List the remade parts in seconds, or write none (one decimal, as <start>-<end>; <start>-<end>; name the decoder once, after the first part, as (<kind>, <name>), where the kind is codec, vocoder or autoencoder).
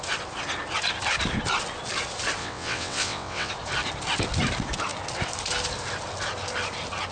2.4-3.5 (vocoder, WaveNeXt)